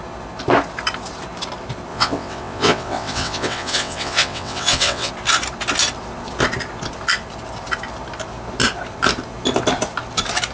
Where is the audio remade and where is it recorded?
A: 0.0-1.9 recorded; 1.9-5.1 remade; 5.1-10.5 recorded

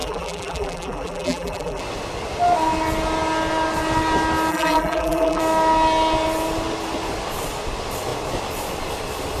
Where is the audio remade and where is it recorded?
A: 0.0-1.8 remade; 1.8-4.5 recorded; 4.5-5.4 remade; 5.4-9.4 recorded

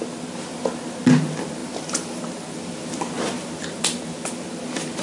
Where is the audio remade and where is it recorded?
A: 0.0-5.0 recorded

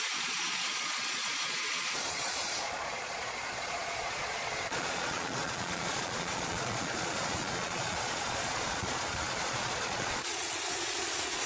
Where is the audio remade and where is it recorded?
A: 0.0-11.5 remade